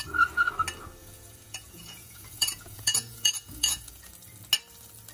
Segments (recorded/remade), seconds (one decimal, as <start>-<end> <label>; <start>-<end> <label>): 0.0-1.0 recorded; 1.0-4.1 remade; 4.1-5.1 recorded